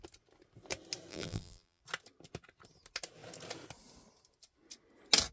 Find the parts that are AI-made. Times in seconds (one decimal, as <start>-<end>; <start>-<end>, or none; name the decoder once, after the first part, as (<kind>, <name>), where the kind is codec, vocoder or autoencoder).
1.1-1.8 (vocoder, BigVGAN v2)